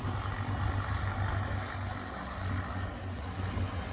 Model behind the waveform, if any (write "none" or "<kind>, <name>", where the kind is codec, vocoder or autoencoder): none